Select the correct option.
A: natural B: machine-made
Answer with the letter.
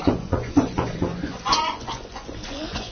B